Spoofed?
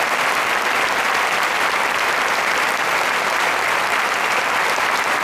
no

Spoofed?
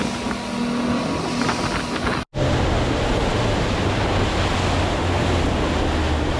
no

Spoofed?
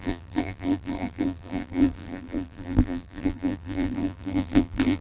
yes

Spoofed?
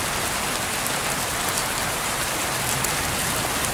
no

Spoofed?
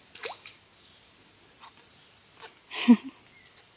yes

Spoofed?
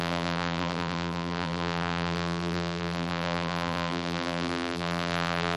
yes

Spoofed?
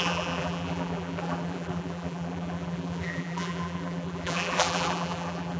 yes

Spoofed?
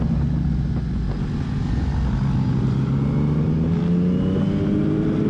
no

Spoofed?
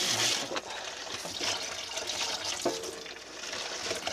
yes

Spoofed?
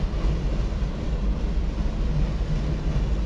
no